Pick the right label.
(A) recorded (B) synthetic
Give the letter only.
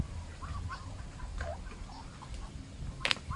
A